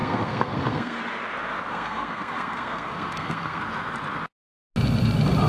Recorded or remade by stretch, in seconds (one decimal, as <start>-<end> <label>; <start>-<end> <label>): 0.0-1.0 remade; 1.0-1.7 recorded; 1.7-3.6 remade; 3.6-5.5 recorded